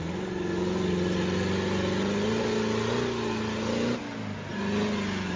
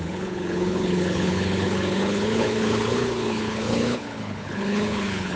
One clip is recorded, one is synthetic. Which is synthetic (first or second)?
second